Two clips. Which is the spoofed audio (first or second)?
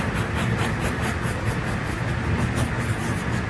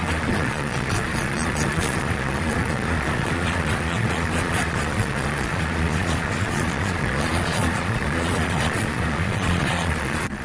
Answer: second